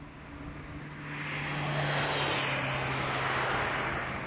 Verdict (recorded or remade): recorded